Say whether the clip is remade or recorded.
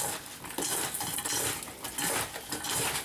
recorded